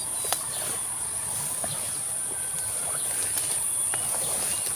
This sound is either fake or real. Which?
real